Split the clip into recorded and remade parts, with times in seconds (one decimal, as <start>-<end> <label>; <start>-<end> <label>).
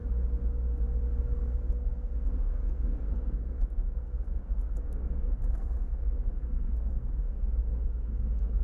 0.0-1.2 recorded; 1.2-8.6 remade